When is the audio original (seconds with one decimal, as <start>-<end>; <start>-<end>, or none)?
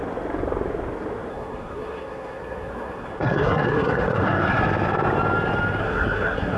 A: 0.0-1.3; 4.6-5.8